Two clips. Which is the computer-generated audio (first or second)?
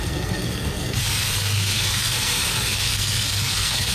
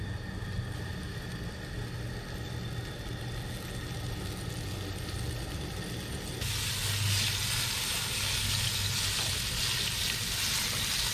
first